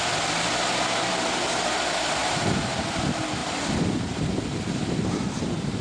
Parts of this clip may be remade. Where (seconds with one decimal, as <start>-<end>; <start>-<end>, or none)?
2.2-3.0; 3.4-5.8